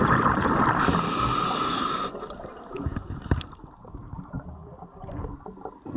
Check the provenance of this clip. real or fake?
real